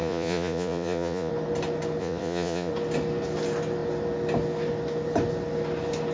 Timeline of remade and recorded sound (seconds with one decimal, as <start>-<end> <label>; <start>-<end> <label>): 0.0-1.3 remade; 1.3-2.0 recorded; 2.0-2.7 remade; 2.7-6.1 recorded